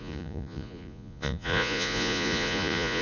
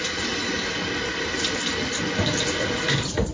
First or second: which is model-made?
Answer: first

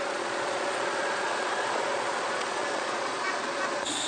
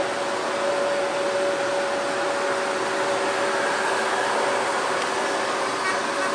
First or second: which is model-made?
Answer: first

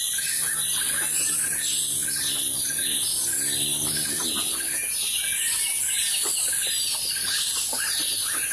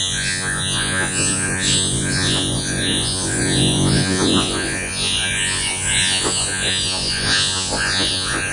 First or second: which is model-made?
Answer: second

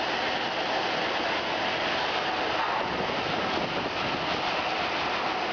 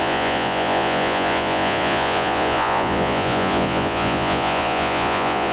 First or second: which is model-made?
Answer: second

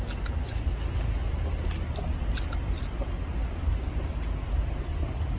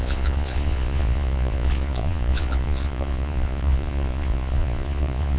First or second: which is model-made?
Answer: second